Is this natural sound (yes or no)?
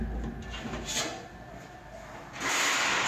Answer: yes